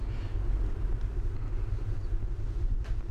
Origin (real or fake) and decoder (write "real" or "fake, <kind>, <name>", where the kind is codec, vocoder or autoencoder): real